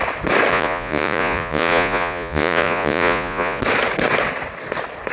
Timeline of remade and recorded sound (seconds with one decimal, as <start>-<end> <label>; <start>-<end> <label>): 0.0-0.5 recorded; 0.5-3.6 remade; 3.6-5.1 recorded